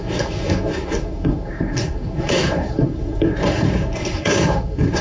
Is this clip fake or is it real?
fake